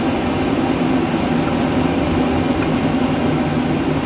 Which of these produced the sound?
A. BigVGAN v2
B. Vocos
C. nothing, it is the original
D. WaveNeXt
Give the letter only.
C